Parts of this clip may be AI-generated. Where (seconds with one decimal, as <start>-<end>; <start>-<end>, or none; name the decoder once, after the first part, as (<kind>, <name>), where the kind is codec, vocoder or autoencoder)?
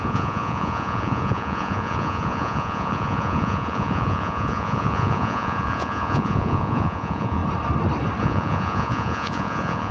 0.0-7.4 (vocoder, Vocos); 8.2-9.9